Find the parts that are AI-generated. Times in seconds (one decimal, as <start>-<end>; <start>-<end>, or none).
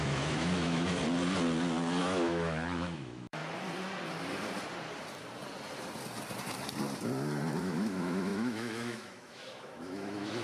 0.0-1.0; 2.0-3.4; 7.6-10.4